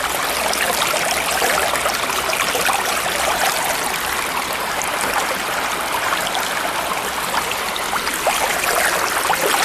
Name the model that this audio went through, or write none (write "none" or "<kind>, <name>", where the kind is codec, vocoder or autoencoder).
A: none